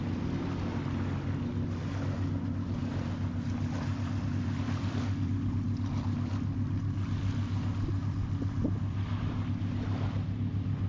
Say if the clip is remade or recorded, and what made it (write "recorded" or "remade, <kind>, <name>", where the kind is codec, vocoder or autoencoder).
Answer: recorded